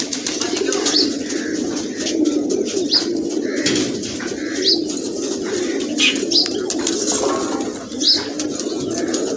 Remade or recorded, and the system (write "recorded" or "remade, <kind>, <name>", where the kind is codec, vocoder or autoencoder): recorded